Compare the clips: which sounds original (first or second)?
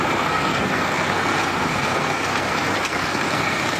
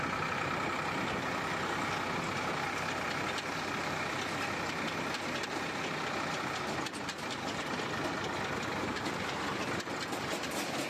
second